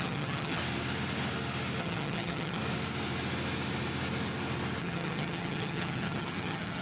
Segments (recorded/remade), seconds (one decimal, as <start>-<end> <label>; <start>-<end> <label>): 0.0-0.6 remade; 0.6-1.8 recorded; 1.8-2.6 remade; 2.6-4.8 recorded; 4.8-6.8 remade